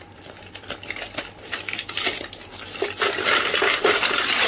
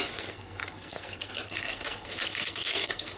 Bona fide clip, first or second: first